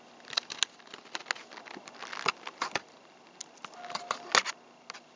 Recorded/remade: recorded